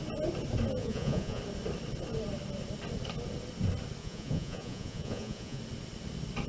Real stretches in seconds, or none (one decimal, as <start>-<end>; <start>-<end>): 0.0-0.8; 1.4-4.0; 5.6-6.5